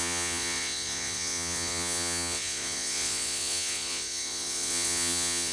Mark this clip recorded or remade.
remade